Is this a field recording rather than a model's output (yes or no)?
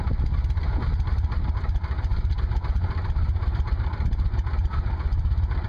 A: yes